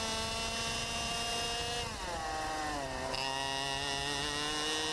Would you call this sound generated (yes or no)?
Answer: no